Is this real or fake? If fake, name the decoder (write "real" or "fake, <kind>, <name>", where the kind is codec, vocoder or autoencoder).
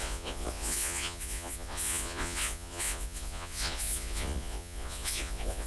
fake, vocoder, Vocos